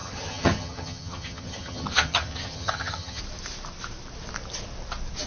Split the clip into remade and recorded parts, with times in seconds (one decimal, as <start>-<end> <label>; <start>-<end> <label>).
0.0-3.2 remade; 3.2-5.3 recorded